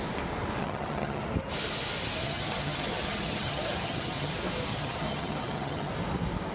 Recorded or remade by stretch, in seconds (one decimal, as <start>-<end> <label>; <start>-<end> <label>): 0.0-0.6 recorded; 0.6-1.2 remade; 1.2-2.2 recorded; 2.2-4.3 remade; 4.3-4.7 recorded; 4.7-5.9 remade; 5.9-6.5 recorded